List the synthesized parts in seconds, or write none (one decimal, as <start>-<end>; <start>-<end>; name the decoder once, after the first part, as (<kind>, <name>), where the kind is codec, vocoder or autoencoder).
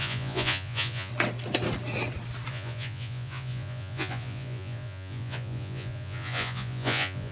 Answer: 0.0-1.1 (vocoder, Vocos); 2.5-7.3